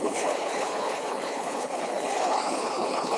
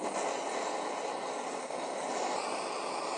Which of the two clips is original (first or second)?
second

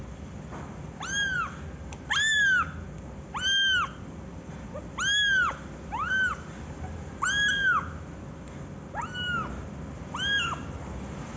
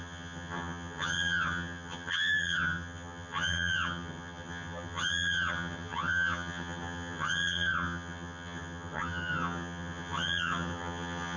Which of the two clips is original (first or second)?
first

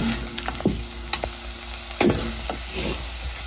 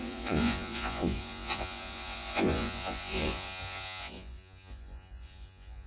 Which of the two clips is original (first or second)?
first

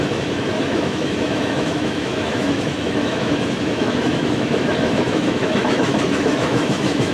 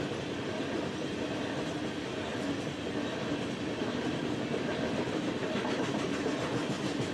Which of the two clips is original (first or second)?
second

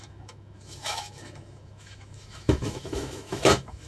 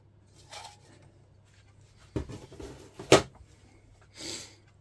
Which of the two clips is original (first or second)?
second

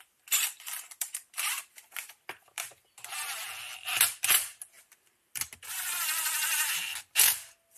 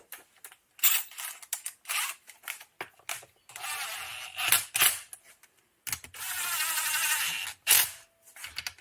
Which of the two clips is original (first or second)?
second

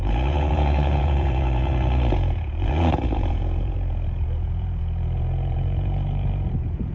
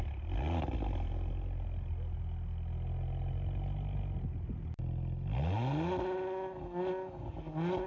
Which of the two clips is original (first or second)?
second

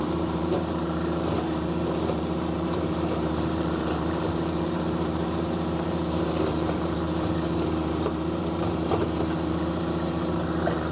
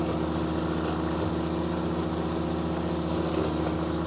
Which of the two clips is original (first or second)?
second